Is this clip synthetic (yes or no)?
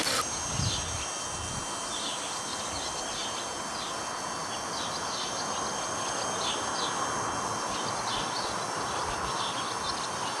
no